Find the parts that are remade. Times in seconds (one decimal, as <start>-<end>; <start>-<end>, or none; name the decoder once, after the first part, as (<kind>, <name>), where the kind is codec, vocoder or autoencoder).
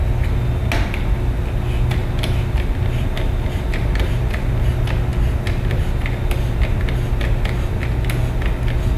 none